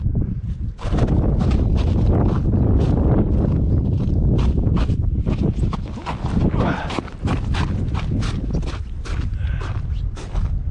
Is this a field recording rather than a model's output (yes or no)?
no